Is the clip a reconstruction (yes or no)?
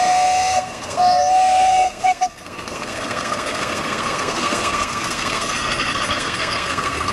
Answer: yes